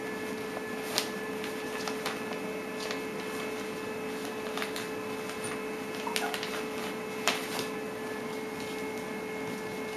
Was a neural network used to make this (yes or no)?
no